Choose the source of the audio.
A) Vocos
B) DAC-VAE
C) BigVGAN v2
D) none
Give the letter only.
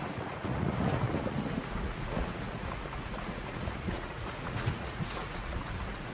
A